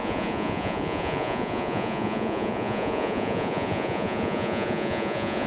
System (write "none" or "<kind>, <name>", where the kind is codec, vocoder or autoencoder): vocoder, Vocos